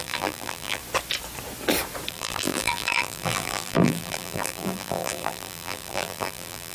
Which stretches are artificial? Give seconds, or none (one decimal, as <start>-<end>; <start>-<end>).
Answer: 0.0-0.8; 2.1-6.7